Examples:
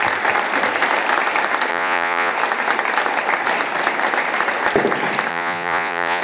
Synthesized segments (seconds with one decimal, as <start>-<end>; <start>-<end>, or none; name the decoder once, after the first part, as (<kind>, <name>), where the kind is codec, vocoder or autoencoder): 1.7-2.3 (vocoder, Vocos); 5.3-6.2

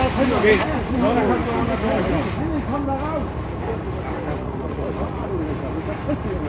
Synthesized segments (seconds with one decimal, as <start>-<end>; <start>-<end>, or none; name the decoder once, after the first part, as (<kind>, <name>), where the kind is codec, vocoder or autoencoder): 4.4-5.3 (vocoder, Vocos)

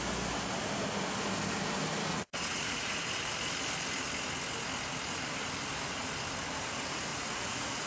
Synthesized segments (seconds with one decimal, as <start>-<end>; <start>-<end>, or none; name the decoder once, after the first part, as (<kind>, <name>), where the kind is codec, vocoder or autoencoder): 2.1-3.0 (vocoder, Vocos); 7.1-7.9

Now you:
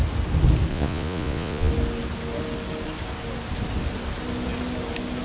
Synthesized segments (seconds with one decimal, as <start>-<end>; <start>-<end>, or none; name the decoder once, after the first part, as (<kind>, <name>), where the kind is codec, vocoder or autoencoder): 0.7-1.7 (vocoder, Vocos)

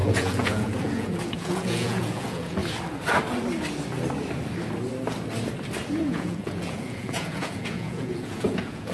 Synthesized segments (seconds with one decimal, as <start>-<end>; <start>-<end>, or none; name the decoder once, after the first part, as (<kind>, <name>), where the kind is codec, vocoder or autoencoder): 0.0-2.6 (vocoder, Vocos); 6.1-8.9

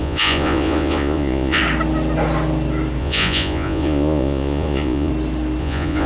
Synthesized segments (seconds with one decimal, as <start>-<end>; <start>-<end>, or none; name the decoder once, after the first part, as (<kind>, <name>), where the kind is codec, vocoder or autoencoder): 0.0-1.6 (vocoder, Vocos); 3.0-5.1; 5.6-6.1

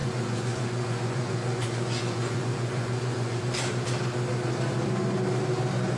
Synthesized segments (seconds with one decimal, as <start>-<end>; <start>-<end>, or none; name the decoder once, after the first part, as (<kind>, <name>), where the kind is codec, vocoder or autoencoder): 0.0-3.4 (vocoder, Vocos)